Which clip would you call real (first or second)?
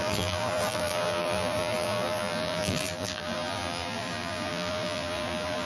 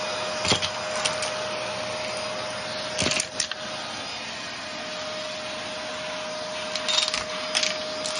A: second